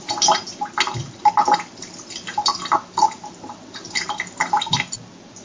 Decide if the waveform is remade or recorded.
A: recorded